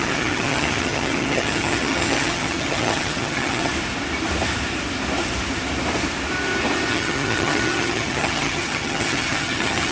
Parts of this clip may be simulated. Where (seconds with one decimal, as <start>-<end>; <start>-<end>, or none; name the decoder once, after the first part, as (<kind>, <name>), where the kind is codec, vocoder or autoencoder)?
0.0-3.7 (vocoder, HiFi-GAN); 6.9-9.9